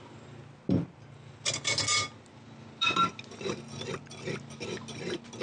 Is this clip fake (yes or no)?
no